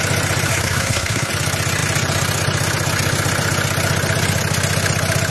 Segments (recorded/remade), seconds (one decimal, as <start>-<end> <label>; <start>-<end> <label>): 0.0-0.5 recorded; 0.5-1.3 remade; 1.3-5.3 recorded

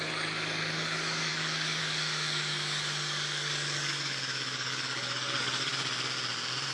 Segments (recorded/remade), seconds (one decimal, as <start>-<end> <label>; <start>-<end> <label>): 0.0-5.7 remade; 5.7-6.7 recorded

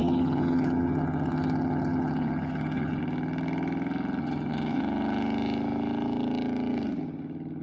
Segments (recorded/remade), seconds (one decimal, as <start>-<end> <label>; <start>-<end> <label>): 0.0-3.0 remade; 3.0-4.2 recorded; 4.2-4.8 remade; 4.8-7.6 recorded

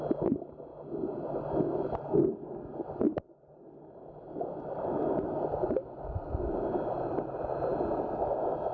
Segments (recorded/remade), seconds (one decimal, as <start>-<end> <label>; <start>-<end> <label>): 0.0-8.7 recorded

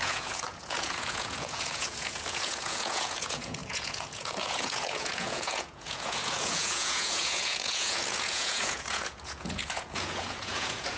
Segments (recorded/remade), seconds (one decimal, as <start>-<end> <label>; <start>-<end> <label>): 0.0-11.0 remade